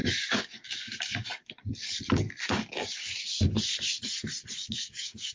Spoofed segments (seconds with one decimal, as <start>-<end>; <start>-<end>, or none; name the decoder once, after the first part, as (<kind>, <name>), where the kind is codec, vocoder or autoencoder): 0.0-3.2 (codec, DAC); 4.6-5.3